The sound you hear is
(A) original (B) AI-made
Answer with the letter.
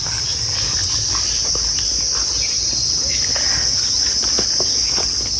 A